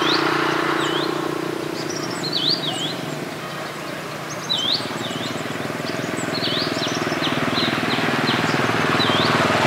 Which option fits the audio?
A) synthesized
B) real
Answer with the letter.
B